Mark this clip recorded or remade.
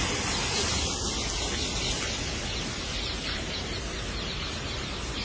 recorded